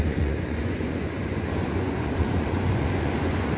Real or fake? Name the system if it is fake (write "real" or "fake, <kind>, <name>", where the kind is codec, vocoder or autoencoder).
fake, vocoder, Vocos